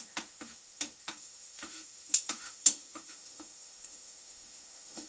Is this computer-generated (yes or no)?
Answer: yes